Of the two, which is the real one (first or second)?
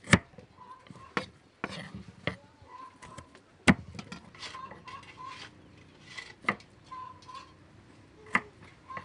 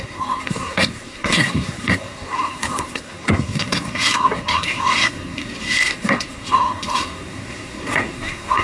first